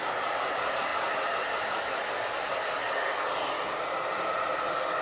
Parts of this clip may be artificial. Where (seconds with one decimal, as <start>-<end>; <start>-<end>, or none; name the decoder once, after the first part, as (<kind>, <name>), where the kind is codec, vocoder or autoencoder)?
none